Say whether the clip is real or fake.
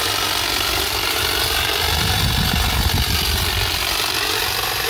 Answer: real